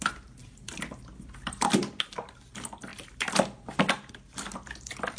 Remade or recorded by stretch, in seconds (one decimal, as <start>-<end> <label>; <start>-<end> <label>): 0.0-5.2 recorded